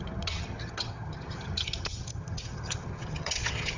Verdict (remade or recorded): remade